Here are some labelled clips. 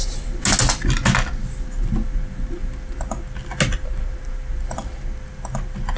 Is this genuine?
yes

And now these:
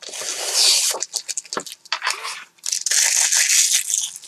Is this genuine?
yes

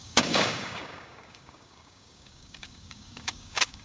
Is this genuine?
no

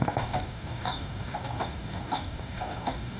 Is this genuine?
no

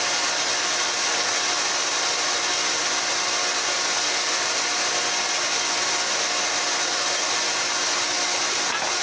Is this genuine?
yes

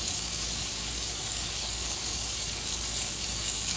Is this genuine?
no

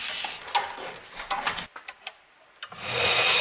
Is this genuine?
yes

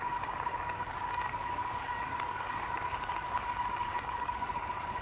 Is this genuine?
no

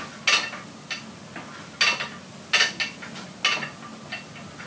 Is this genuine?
yes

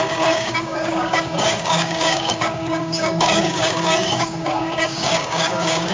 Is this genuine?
no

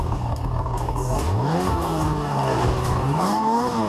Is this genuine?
no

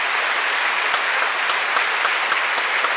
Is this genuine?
yes